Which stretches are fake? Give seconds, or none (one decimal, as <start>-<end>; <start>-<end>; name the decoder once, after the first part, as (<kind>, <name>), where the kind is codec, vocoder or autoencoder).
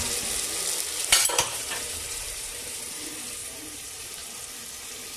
1.0-2.8 (vocoder, BigVGAN v2); 3.4-4.3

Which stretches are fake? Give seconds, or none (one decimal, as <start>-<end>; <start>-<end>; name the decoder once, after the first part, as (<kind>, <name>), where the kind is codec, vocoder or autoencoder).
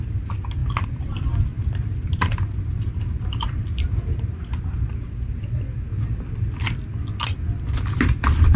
1.5-5.3 (vocoder, BigVGAN v2)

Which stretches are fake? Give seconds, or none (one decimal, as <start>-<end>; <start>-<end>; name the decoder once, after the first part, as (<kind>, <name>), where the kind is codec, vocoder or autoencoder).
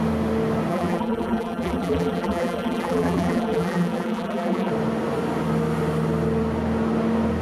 0.7-4.7 (vocoder, BigVGAN v2)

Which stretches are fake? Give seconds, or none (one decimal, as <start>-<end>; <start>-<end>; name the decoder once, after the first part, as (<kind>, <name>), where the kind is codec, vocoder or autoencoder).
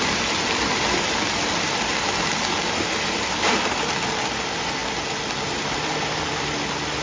none